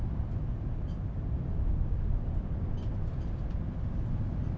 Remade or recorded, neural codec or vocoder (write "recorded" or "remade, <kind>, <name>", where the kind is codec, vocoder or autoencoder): recorded